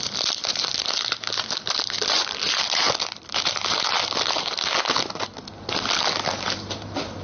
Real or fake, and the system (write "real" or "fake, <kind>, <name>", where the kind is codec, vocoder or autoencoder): real